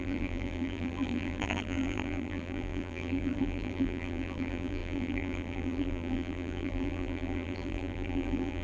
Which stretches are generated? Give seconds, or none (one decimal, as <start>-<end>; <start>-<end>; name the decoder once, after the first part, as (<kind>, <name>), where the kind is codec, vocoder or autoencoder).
0.0-8.6 (vocoder, BigVGAN v2)